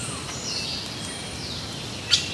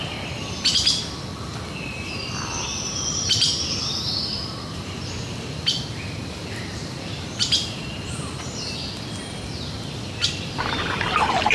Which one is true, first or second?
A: first